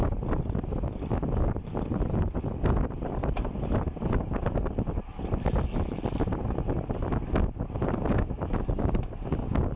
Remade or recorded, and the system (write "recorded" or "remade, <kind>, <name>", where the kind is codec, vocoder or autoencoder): recorded